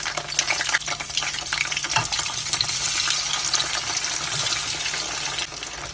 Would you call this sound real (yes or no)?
yes